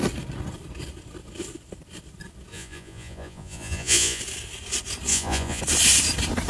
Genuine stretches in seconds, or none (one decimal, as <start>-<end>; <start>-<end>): 0.0-2.5; 4.2-5.1; 5.6-6.5